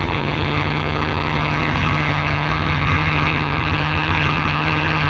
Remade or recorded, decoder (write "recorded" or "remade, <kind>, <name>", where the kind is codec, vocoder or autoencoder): remade, vocoder, HiFi-GAN